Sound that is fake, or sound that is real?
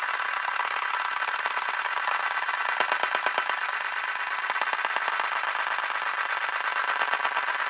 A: real